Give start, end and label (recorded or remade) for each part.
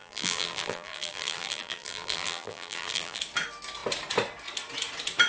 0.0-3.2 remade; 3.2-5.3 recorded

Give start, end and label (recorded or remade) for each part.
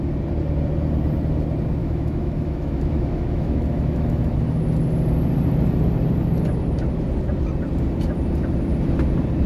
0.0-1.8 recorded; 1.8-4.3 remade; 4.3-9.5 recorded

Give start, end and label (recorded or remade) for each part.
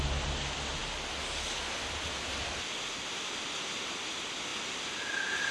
0.0-5.5 recorded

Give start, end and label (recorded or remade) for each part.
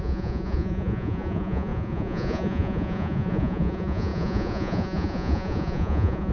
0.0-6.3 remade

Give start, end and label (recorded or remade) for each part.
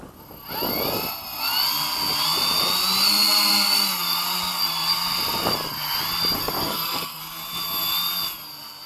0.0-6.4 recorded; 6.4-7.2 remade; 7.2-8.9 recorded